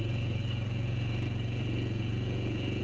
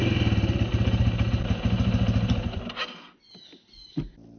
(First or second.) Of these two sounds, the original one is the second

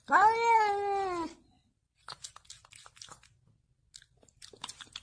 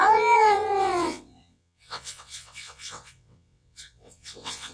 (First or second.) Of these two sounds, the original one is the first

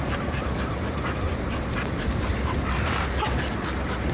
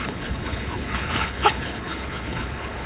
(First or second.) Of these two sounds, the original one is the first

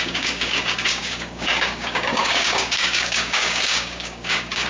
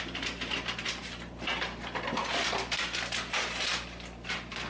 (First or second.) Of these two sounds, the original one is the second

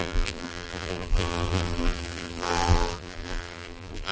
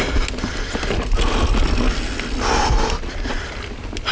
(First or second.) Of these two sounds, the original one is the second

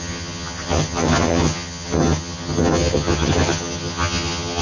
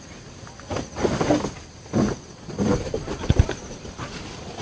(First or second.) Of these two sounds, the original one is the second